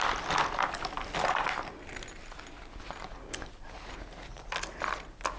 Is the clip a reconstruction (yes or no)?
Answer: no